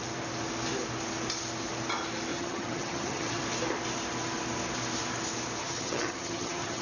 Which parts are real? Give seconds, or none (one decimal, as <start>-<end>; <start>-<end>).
0.0-2.3; 3.4-5.6